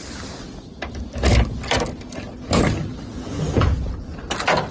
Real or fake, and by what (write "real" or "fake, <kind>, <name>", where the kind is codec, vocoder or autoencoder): real